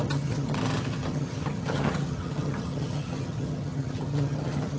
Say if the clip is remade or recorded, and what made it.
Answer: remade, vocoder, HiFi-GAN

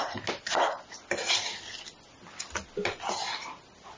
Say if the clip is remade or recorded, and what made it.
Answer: recorded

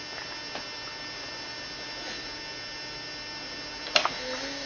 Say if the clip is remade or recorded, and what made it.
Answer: recorded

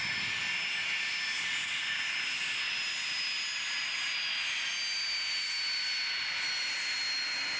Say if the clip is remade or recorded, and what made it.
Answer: recorded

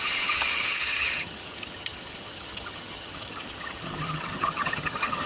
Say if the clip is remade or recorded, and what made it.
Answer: remade, vocoder, HiFi-GAN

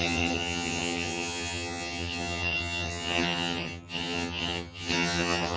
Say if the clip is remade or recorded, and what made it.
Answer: remade, vocoder, HiFi-GAN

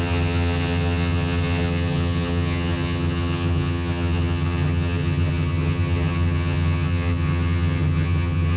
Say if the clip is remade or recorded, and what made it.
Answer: remade, vocoder, HiFi-GAN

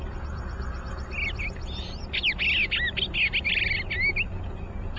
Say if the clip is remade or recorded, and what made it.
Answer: recorded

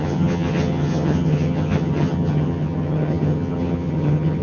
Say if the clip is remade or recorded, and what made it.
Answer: remade, vocoder, HiFi-GAN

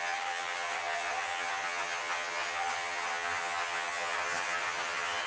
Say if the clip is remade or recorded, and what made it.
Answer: remade, vocoder, HiFi-GAN